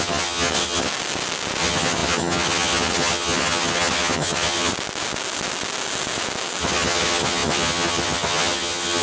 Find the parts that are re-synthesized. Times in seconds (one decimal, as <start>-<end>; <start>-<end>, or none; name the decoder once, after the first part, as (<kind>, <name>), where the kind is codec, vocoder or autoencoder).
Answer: 0.0-0.9 (vocoder, HiFi-GAN); 1.6-4.7; 6.6-9.0